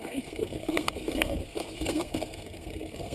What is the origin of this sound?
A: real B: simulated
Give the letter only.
B